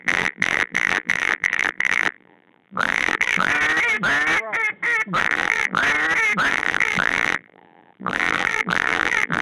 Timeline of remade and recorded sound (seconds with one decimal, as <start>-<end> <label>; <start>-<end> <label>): 0.0-3.5 remade; 3.5-5.2 recorded; 5.2-5.8 remade; 5.8-6.5 recorded; 6.5-9.4 remade